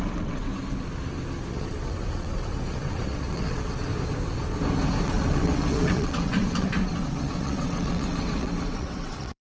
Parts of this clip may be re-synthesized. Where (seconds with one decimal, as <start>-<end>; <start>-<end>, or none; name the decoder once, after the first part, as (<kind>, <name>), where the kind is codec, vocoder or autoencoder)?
0.0-0.5 (vocoder, WaveNeXt); 1.5-3.9; 5.0-9.5